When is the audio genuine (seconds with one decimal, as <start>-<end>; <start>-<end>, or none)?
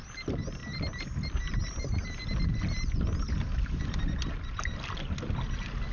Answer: 0.0-5.9